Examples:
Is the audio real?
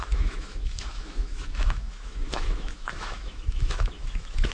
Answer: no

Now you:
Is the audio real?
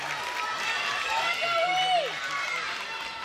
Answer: yes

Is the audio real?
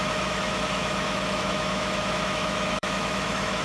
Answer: no